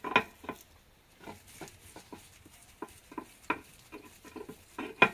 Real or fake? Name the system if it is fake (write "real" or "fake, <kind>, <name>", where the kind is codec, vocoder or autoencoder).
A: real